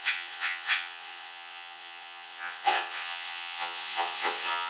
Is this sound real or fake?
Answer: fake